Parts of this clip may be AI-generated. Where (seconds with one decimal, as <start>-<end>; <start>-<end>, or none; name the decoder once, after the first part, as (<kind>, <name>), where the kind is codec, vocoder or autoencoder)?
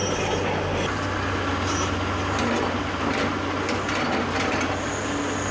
none